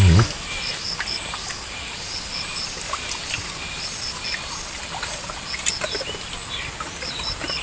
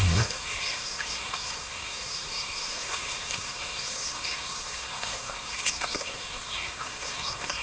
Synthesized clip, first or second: second